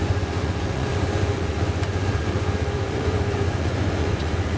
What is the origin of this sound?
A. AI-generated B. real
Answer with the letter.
A